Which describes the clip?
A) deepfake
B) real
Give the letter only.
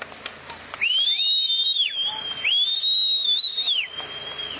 B